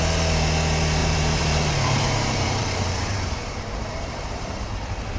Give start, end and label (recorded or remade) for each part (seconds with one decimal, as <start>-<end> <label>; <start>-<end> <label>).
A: 0.0-1.0 recorded; 1.0-4.1 remade; 4.1-5.2 recorded